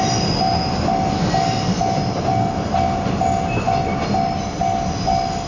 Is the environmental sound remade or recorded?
recorded